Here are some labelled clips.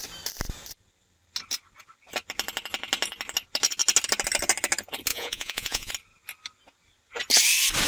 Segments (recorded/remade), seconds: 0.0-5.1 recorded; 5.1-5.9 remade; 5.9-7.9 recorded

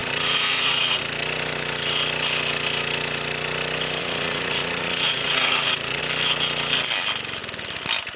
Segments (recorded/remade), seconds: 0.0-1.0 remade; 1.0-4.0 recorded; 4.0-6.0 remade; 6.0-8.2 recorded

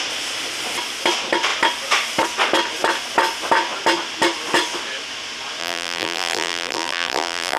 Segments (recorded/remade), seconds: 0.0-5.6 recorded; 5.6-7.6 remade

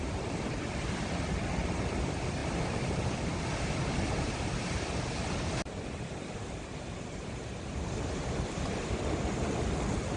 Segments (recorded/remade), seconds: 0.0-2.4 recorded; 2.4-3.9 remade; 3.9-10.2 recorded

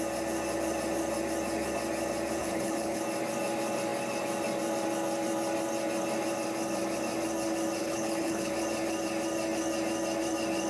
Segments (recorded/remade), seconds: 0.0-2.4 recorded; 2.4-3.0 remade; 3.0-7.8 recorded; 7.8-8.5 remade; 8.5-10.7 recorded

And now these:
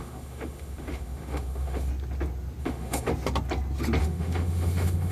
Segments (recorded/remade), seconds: 0.0-1.9 remade; 1.9-2.6 recorded; 2.6-3.1 remade; 3.1-4.0 recorded; 4.0-5.1 remade